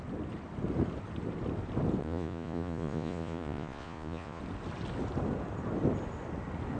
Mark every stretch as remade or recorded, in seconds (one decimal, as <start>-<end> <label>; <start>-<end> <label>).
0.0-2.0 recorded; 2.0-4.4 remade; 4.4-6.8 recorded